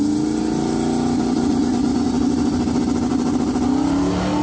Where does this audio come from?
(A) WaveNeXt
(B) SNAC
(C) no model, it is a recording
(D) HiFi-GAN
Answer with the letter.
C